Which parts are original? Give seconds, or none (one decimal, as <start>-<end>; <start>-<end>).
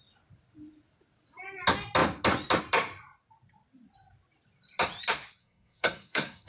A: 0.0-5.4